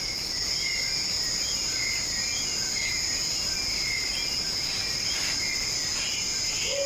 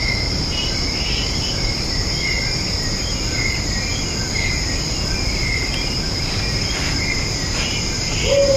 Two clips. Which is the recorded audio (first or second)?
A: first